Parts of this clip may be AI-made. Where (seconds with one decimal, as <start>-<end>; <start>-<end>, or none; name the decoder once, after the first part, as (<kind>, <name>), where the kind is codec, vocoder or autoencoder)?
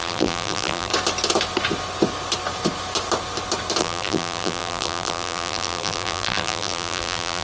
0.0-0.9 (vocoder, BigVGAN v2); 3.8-7.4